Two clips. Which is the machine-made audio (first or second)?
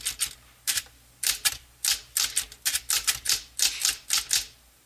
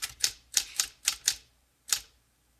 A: second